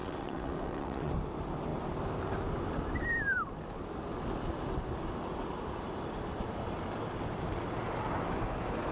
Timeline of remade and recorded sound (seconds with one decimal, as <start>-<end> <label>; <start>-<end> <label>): 0.0-1.1 remade; 1.1-8.9 recorded